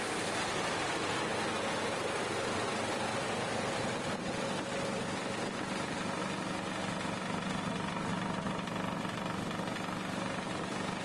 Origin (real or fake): real